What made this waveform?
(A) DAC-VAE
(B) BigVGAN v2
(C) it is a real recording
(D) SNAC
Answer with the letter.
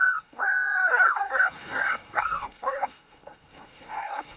D